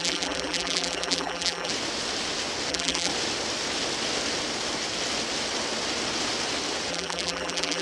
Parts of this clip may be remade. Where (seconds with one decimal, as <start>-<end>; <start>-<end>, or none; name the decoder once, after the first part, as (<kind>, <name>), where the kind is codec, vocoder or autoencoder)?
0.0-1.7 (vocoder, BigVGAN v2); 2.7-3.1; 6.9-7.8